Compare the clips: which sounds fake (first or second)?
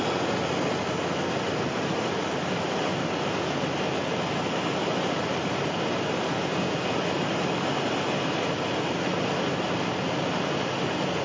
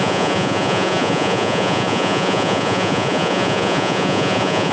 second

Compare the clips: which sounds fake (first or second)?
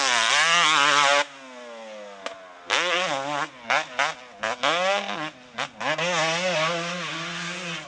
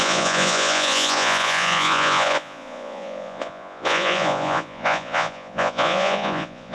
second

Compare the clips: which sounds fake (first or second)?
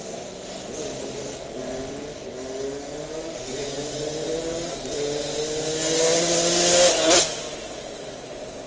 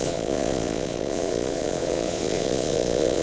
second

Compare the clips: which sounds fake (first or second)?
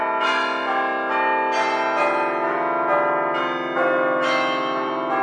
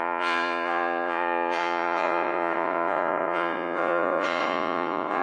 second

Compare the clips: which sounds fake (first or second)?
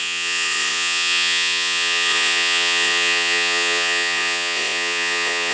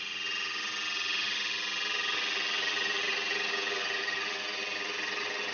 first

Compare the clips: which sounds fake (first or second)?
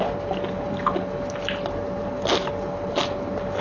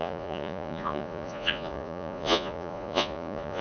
second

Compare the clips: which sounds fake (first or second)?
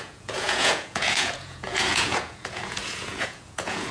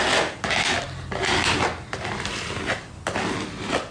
first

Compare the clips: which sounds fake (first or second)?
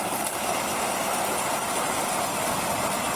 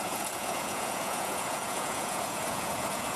second